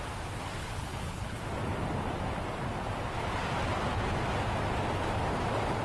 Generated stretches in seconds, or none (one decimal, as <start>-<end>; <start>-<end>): 0.6-1.4